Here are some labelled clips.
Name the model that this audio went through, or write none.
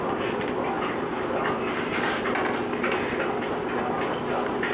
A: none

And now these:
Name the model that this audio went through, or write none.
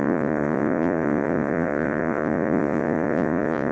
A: vocoder, Vocos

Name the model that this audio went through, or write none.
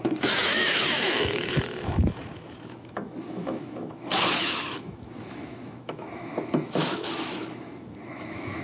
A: autoencoder, DAC-VAE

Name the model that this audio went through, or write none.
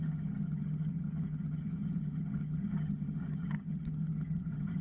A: vocoder, HiFi-GAN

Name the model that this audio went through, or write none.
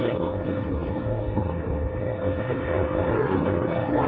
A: codec, SNAC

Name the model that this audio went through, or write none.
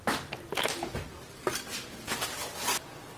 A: none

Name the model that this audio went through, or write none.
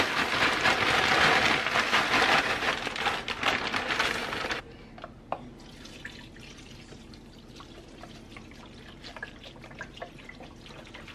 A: none